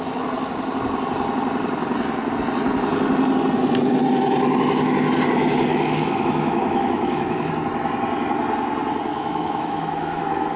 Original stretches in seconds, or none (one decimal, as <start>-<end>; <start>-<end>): 0.0-5.7; 7.5-9.1; 10.2-10.6